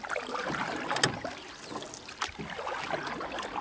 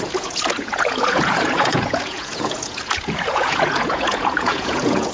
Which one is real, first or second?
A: first